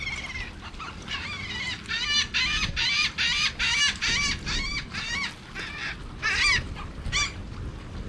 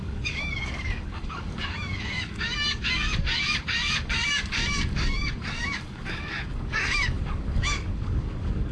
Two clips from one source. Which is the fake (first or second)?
second